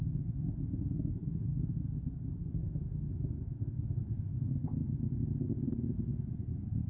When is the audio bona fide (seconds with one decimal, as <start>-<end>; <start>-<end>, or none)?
1.2-2.5; 4.8-6.9